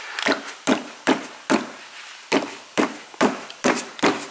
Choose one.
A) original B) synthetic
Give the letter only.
B